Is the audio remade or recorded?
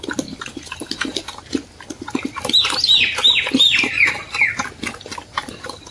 recorded